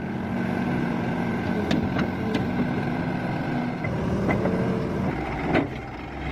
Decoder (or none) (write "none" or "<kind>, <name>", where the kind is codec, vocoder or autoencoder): none